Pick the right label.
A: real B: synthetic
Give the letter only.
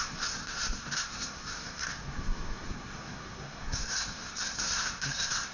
B